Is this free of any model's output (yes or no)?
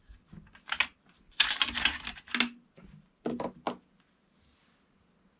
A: yes